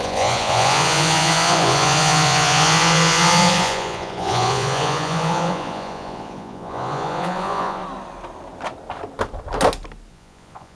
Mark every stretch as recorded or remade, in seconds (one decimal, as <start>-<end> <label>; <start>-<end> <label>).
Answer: 0.0-7.8 remade; 7.8-10.1 recorded; 10.1-10.8 remade